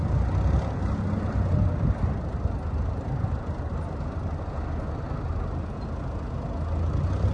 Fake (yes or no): no